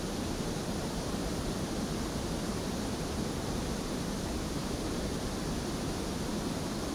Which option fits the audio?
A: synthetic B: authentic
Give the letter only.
A